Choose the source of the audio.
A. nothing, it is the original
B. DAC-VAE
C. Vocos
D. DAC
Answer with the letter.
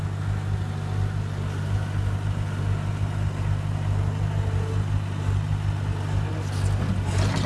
A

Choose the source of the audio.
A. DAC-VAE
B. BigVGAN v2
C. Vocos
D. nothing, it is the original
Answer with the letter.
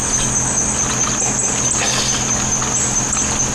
D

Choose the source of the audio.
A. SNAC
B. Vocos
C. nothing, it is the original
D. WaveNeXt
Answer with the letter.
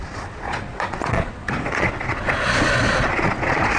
B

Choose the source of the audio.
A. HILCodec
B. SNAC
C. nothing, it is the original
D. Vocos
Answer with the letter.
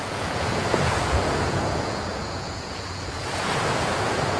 D